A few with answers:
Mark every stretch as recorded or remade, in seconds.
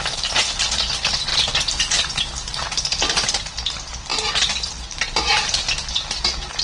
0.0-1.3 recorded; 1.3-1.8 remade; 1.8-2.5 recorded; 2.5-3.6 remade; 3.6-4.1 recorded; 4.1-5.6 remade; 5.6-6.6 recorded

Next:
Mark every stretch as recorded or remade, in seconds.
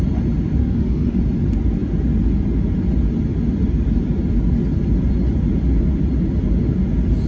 0.0-0.6 recorded; 0.6-1.2 remade; 1.2-7.3 recorded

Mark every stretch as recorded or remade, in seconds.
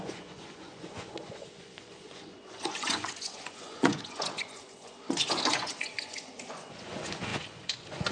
0.0-8.1 remade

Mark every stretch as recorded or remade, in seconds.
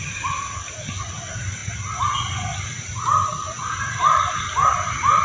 0.0-5.2 recorded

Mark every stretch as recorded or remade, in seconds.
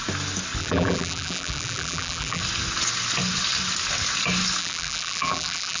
0.0-0.6 recorded; 0.6-2.4 remade; 2.4-4.6 recorded; 4.6-5.8 remade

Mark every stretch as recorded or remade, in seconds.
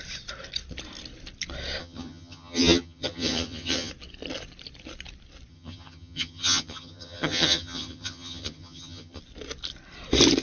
0.0-1.8 recorded; 1.8-3.9 remade; 3.9-5.5 recorded; 5.5-9.2 remade; 9.2-10.4 recorded